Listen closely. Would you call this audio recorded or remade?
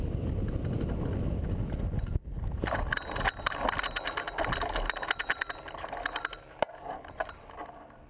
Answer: recorded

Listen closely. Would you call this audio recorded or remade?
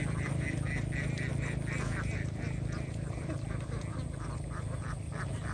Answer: recorded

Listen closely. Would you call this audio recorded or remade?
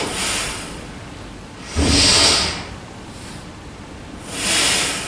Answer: recorded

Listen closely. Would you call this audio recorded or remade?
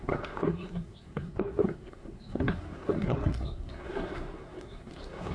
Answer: remade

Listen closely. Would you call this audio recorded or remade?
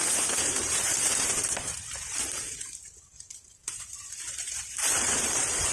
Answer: remade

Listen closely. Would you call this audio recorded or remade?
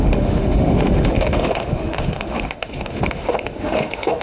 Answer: remade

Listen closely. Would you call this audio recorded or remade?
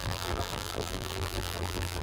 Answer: remade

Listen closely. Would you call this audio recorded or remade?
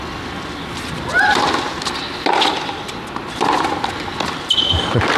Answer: recorded